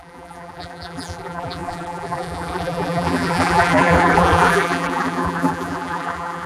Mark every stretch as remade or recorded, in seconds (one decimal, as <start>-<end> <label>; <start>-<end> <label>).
0.0-6.5 remade